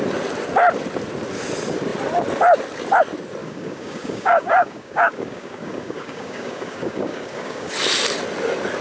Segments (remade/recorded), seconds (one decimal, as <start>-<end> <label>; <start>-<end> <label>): 0.0-3.4 recorded; 3.4-7.7 remade; 7.7-8.8 recorded